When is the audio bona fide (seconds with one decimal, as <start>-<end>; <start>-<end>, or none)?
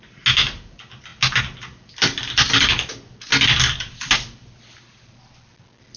0.0-6.0